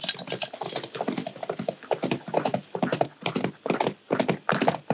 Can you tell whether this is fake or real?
real